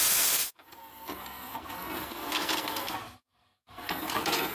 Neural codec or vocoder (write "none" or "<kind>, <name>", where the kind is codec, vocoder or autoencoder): codec, SNAC